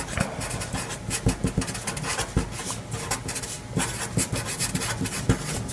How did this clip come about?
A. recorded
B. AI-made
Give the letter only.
A